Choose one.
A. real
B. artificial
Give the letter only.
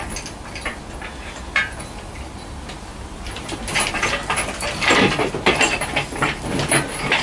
B